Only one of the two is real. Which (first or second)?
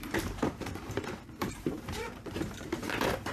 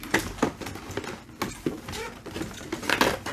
second